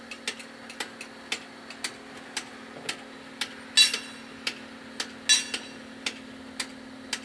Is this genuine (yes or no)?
yes